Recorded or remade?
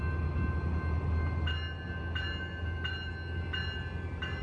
recorded